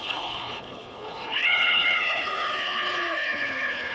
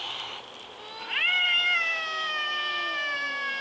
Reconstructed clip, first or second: first